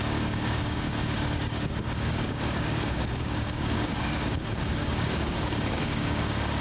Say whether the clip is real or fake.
fake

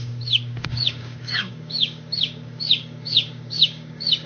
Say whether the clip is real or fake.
fake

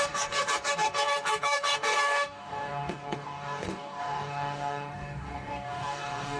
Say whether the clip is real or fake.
fake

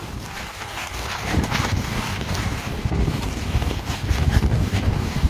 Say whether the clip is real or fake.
fake